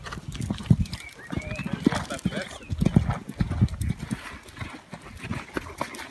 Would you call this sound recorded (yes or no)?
yes